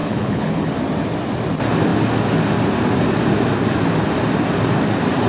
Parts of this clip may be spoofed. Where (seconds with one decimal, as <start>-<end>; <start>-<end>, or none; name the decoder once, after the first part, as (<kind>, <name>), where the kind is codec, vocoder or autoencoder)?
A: 0.0-0.7 (codec, HILCodec)